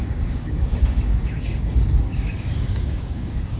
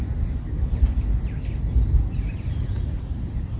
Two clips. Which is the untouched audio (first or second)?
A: second